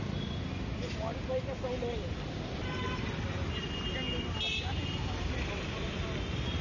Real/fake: real